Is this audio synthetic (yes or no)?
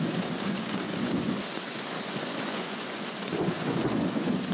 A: yes